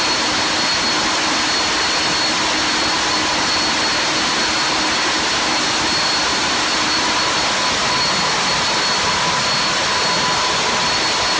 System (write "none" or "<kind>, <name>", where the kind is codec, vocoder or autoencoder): none